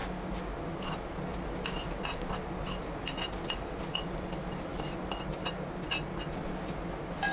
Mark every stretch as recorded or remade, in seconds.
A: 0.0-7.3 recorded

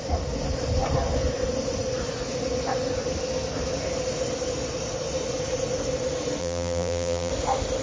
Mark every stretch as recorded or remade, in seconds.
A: 0.0-6.4 recorded; 6.4-7.3 remade; 7.3-7.8 recorded